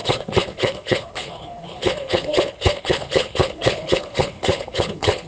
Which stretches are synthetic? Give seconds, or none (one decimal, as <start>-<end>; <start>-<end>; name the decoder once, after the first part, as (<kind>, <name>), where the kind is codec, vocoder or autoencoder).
0.0-5.3 (codec, HILCodec)